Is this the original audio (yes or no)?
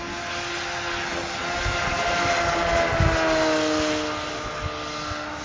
yes